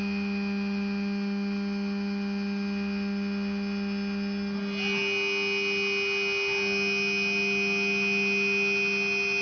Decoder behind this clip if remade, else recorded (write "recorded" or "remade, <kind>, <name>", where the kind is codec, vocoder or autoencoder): recorded